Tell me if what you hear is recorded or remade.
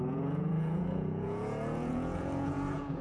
remade